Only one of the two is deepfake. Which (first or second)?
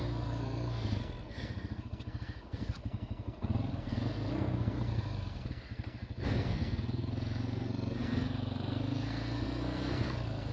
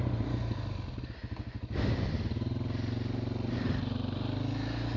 first